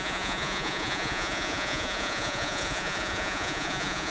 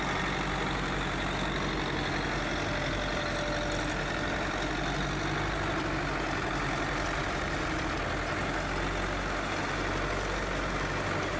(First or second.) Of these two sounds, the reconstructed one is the first